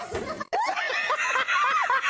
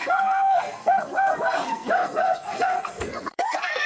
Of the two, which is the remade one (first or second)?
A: second